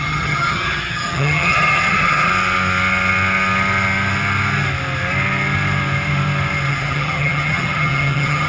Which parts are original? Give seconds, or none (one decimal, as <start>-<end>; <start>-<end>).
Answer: 2.3-6.7